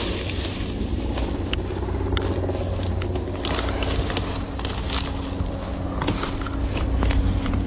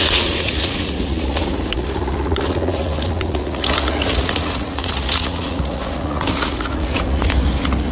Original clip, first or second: first